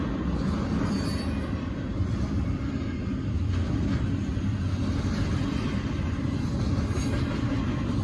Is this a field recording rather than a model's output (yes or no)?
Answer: yes